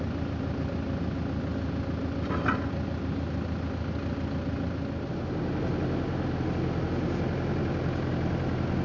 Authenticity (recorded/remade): recorded